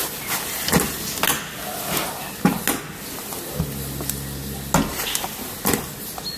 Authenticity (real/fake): real